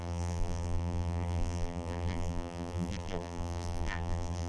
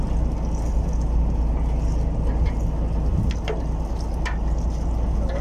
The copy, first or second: first